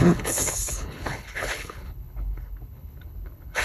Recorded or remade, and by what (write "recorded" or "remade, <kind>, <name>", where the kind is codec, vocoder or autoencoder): remade, codec, HILCodec